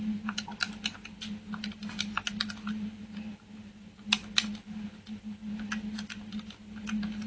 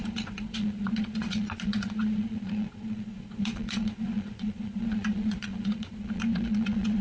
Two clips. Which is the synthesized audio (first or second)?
second